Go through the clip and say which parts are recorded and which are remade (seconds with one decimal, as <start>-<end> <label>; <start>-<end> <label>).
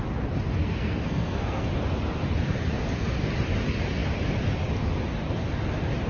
0.0-0.6 recorded; 0.6-1.7 remade; 1.7-6.1 recorded